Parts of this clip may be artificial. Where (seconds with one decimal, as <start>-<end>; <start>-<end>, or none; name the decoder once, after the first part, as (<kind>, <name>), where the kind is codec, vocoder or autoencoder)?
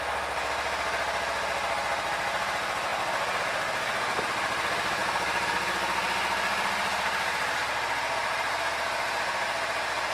none